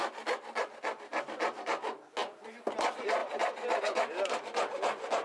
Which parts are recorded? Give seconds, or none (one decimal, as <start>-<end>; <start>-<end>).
0.0-1.1; 1.6-3.2; 3.8-5.2

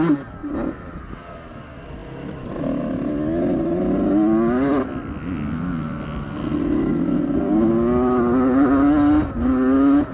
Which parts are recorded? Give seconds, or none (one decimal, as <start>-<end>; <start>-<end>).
0.0-0.4; 1.2-2.0; 2.6-5.9; 6.8-10.1

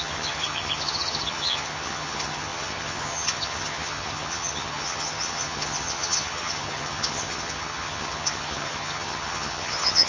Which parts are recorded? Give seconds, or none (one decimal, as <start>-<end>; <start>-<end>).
none

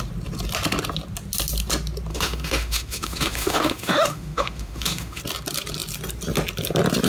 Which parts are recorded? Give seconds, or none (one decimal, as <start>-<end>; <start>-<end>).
0.0-2.1; 5.2-7.1